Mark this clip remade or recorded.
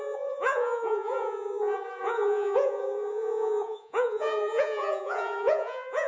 remade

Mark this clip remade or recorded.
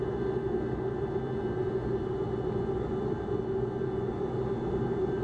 recorded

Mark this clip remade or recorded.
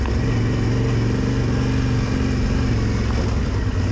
recorded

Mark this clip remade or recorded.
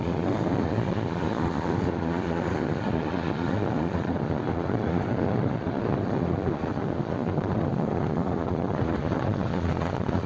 remade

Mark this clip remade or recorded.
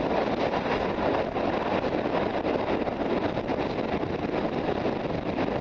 recorded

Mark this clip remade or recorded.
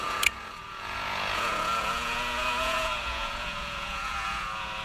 remade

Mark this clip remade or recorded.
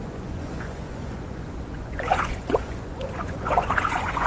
remade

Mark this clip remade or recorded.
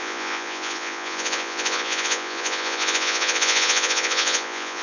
remade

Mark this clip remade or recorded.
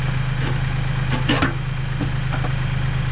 recorded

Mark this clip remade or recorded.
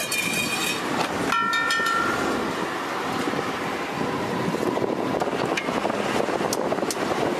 recorded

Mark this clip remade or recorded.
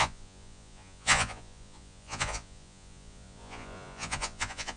remade